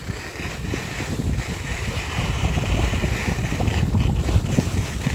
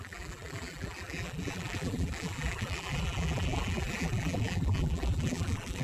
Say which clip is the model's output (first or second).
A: second